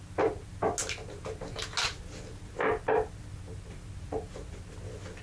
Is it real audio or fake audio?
real